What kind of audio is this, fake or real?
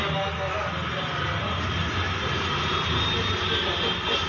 real